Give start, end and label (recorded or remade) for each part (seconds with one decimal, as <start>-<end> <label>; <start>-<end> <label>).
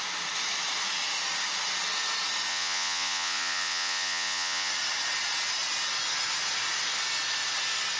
0.0-2.5 recorded; 2.5-4.7 remade; 4.7-8.0 recorded